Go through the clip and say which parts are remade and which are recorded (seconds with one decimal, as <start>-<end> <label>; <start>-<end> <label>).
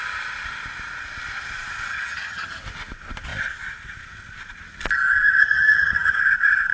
0.0-1.9 recorded; 1.9-2.6 remade; 2.6-5.4 recorded; 5.4-6.2 remade; 6.2-6.7 recorded